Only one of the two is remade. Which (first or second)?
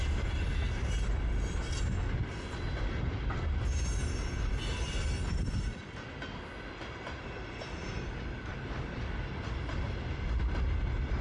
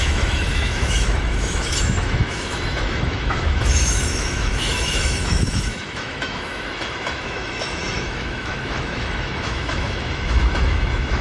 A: second